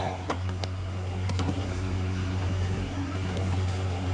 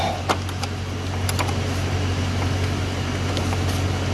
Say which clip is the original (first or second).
second